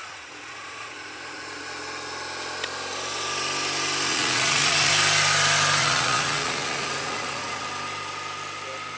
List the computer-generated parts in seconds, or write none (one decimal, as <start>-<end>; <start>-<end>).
0.0-1.6; 4.1-4.9; 5.8-7.7